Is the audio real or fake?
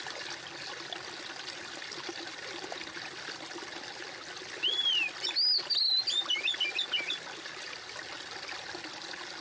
real